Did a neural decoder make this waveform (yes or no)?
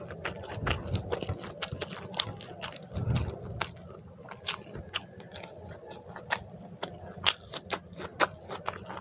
no